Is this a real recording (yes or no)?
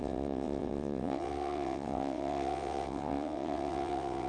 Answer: no